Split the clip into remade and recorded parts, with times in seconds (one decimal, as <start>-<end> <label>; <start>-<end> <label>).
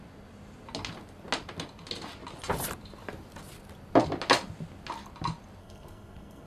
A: 0.0-5.6 recorded; 5.6-6.5 remade